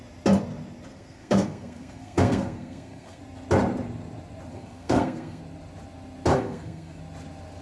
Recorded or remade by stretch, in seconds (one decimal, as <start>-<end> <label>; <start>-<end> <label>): 0.0-0.9 recorded; 0.9-3.2 remade; 3.2-4.5 recorded; 4.5-5.4 remade; 5.4-6.3 recorded; 6.3-7.0 remade; 7.0-7.6 recorded